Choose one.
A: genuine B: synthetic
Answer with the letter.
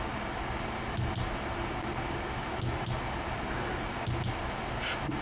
A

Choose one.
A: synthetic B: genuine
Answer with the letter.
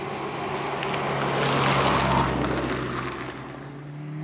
B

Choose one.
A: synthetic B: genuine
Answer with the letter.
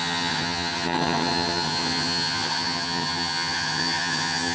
A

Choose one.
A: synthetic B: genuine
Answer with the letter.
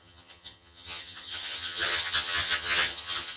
A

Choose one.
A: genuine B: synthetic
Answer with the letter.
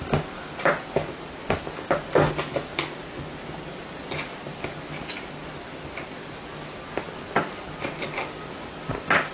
A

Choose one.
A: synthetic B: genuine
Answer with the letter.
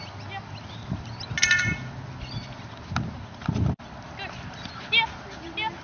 B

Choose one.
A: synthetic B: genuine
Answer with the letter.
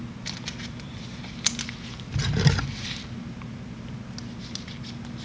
B